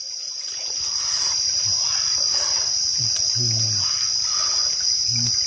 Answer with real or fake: real